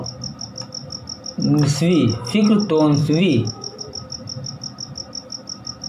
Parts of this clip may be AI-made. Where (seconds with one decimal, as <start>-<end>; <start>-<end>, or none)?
3.0-3.8